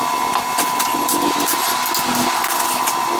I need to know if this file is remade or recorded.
recorded